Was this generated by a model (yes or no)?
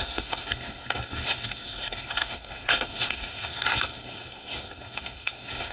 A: yes